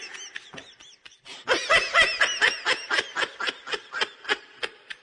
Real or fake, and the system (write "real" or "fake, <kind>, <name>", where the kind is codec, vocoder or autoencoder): real